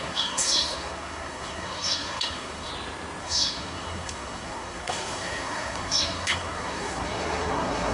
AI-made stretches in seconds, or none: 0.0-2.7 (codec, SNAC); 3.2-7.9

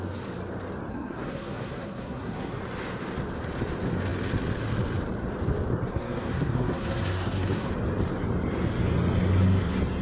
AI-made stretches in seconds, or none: 0.9-2.6 (codec, SNAC); 5.9-7.7

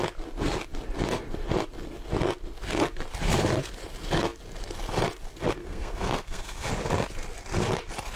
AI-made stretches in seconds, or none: 5.6-6.7 (codec, SNAC)